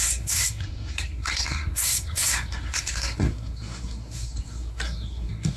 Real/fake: fake